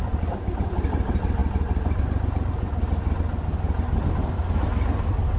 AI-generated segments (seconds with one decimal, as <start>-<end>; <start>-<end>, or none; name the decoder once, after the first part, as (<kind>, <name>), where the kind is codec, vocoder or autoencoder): none

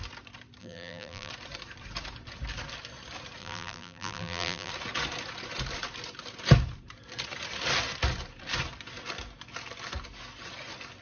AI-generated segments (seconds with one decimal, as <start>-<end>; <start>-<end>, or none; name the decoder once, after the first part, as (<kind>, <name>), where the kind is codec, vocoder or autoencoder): 0.6-1.3 (vocoder, BigVGAN v2); 3.4-4.7

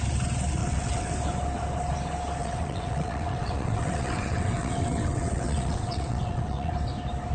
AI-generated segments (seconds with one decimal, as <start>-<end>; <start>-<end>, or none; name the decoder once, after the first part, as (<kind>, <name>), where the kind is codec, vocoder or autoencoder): 0.6-1.1 (vocoder, WaveNeXt); 2.4-6.7